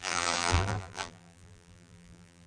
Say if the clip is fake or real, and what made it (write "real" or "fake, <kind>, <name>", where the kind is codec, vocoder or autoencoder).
fake, vocoder, BigVGAN v2